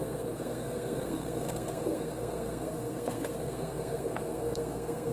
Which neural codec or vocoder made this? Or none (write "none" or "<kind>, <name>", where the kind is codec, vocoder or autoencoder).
codec, SNAC